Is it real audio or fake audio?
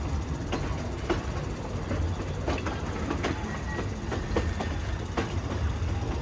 real